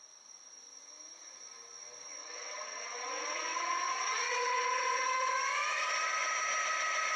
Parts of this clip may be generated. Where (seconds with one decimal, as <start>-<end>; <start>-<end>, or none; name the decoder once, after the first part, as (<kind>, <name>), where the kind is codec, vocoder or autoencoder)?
2.2-5.3 (vocoder, WaveNeXt)